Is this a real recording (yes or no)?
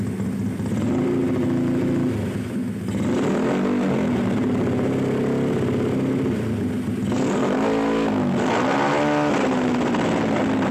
yes